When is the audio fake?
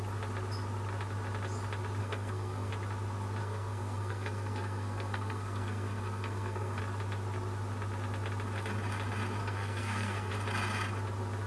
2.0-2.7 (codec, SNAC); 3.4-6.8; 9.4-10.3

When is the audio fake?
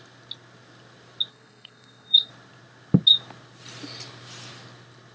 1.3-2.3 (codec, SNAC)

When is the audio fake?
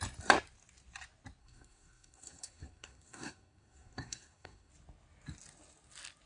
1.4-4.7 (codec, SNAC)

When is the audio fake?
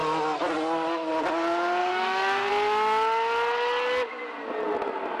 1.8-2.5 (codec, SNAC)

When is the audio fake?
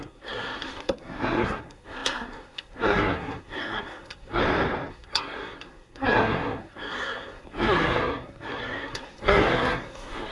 0.0-4.4 (codec, SNAC); 4.9-10.3